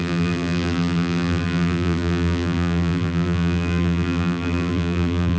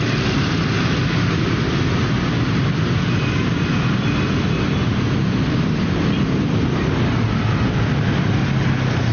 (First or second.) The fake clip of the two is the first